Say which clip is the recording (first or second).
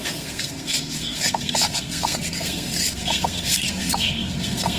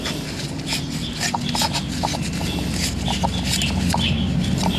second